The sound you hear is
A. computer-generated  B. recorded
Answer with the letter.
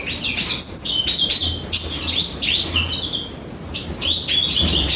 B